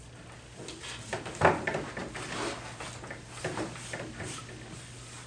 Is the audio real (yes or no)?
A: yes